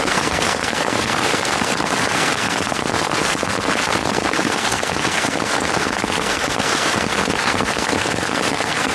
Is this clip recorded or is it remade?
remade